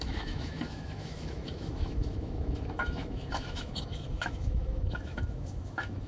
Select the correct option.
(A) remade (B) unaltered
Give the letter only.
A